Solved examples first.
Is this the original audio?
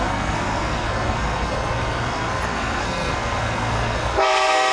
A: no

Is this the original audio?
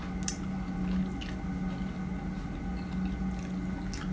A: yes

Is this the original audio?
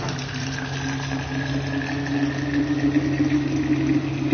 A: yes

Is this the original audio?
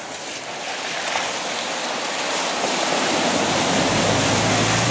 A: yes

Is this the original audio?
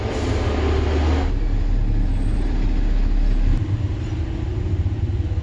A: yes